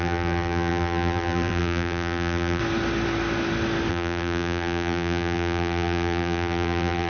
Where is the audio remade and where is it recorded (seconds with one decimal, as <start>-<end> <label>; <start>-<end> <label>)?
0.0-2.6 remade; 2.6-3.9 recorded; 3.9-7.1 remade